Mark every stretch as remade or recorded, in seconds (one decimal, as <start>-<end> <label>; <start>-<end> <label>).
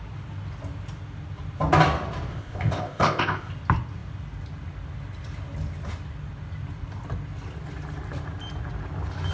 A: 0.0-2.3 recorded; 2.3-3.5 remade; 3.5-9.3 recorded